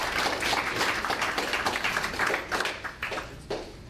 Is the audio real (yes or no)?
yes